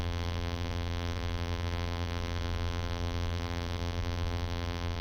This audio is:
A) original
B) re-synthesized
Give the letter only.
B